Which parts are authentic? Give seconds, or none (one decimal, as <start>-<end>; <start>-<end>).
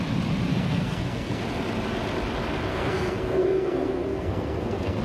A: 0.0-0.5; 1.4-2.7